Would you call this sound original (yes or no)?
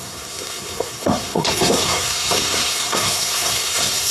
no